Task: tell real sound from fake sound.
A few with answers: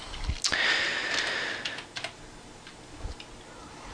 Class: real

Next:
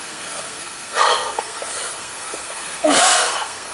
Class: fake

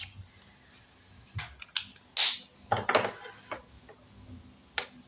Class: real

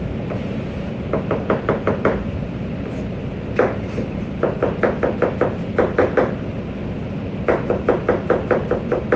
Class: fake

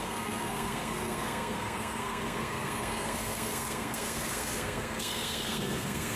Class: fake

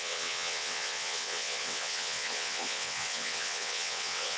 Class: fake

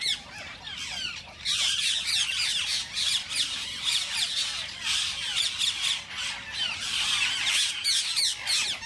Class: real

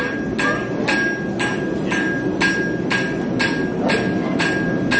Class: real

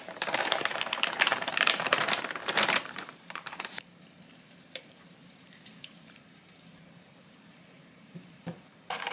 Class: fake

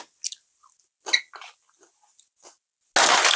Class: real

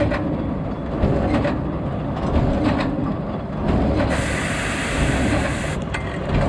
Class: real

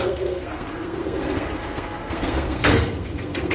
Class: fake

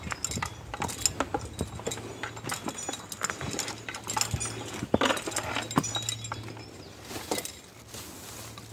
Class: real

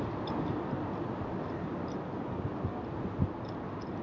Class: real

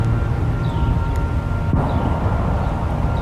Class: real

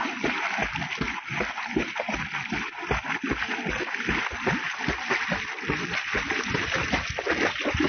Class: real